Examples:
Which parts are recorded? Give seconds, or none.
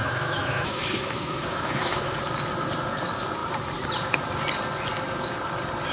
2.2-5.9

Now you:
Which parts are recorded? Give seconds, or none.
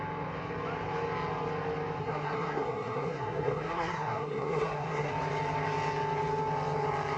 0.0-2.0; 5.1-7.2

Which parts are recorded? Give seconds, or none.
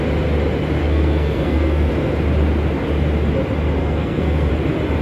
0.0-0.8; 1.9-3.8; 4.5-5.0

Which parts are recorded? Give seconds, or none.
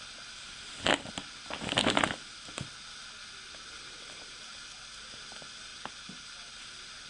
0.0-7.1